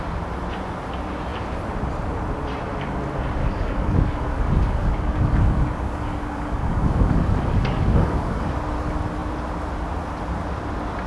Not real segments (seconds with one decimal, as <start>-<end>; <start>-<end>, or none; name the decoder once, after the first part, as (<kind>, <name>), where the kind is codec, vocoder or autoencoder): 3.4-8.5 (codec, DAC)